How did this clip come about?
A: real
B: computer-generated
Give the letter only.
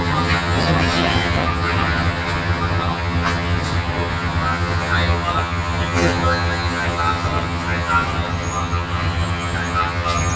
B